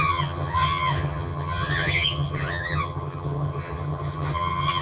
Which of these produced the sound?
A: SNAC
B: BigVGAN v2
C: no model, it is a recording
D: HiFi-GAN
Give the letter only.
D